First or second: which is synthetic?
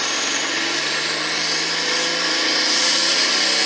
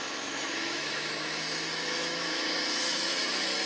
second